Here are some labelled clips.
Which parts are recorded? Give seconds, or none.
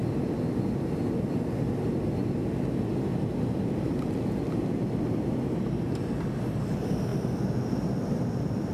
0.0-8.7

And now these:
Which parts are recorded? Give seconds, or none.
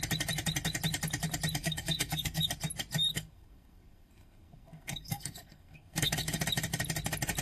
0.0-1.6; 2.4-3.1; 6.4-7.4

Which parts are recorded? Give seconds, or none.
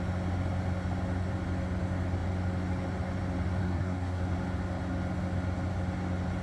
0.0-3.6; 4.2-6.4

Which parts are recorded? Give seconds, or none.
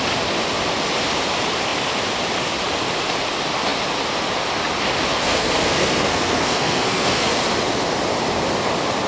0.0-5.1; 7.3-9.1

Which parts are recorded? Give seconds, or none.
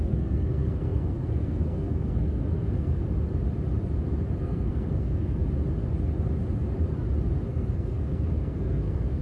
3.0-4.4; 5.4-7.5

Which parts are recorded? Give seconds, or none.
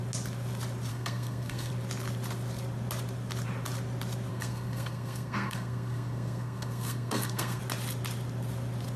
0.0-0.9; 1.7-4.3; 7.6-9.0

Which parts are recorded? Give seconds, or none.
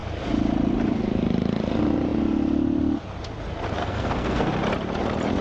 0.0-3.8; 4.5-5.4